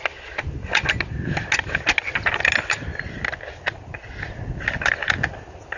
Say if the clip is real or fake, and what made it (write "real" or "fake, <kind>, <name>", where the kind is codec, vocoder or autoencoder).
real